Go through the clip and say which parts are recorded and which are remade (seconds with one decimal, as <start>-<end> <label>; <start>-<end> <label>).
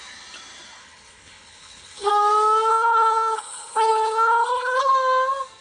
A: 0.0-0.8 recorded; 0.8-2.1 remade; 2.1-2.7 recorded; 2.7-4.9 remade; 4.9-5.6 recorded